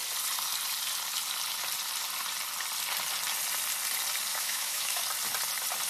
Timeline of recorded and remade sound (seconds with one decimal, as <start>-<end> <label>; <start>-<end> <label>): 0.0-4.3 recorded; 4.3-5.0 remade; 5.0-5.9 recorded